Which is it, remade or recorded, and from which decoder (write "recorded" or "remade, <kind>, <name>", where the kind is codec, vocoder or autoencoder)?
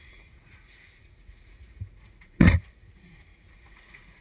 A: remade, vocoder, Vocos